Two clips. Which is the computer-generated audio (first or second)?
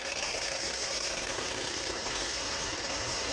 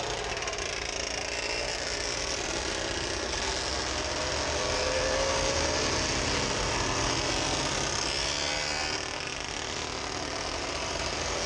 first